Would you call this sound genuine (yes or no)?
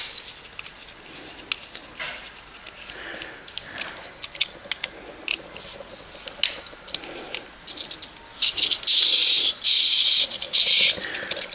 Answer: yes